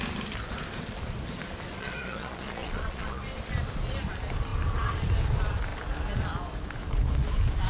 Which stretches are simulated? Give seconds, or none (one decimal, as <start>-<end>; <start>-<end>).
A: 1.8-3.2